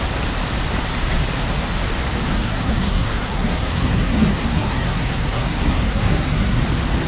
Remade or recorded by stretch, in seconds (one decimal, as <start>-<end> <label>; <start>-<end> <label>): 0.0-2.3 recorded; 2.3-6.6 remade; 6.6-7.1 recorded